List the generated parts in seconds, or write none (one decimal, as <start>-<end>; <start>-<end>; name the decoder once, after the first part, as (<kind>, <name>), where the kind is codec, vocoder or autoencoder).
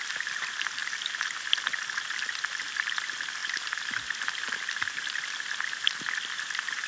none